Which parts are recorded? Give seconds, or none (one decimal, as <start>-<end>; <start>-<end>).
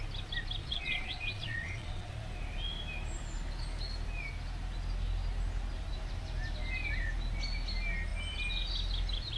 0.0-0.6; 2.1-9.4